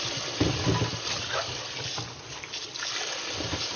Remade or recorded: recorded